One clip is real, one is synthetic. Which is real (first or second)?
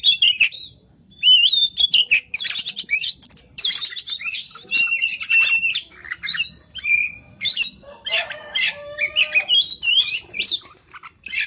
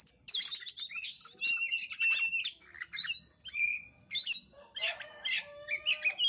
second